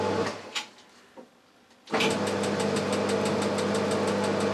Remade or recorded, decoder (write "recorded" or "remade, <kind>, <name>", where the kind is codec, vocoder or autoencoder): recorded